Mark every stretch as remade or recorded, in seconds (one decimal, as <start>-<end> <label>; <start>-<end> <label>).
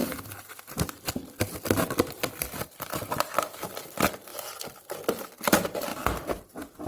0.0-1.1 remade; 1.1-6.9 recorded